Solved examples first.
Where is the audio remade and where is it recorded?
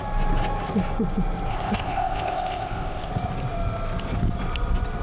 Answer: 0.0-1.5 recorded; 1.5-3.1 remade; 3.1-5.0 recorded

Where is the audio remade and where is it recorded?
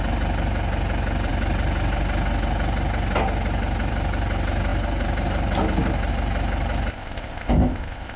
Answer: 0.0-6.9 recorded; 6.9-8.2 remade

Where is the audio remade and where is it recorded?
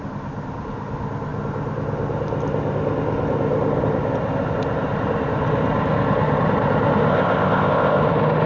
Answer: 0.0-7.1 recorded; 7.1-8.0 remade; 8.0-8.5 recorded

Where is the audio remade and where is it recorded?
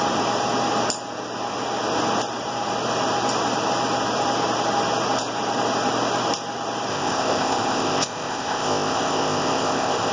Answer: 0.0-6.9 recorded; 6.9-10.1 remade